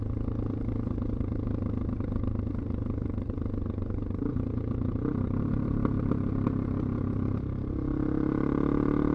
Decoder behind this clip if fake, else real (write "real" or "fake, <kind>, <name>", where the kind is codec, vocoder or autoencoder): fake, vocoder, BigVGAN v2